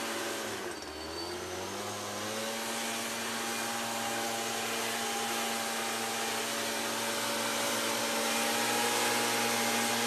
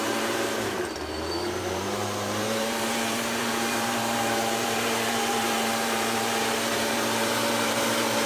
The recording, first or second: first